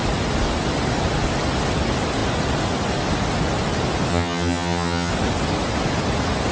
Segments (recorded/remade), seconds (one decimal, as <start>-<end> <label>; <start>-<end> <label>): 0.0-4.1 recorded; 4.1-5.1 remade; 5.1-6.5 recorded